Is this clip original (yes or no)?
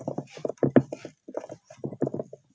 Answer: yes